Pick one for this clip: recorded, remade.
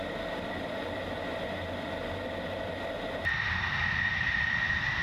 recorded